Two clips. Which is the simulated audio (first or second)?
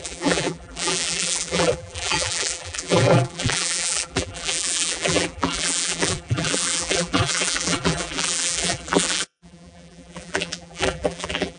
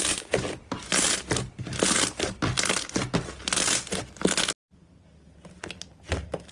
first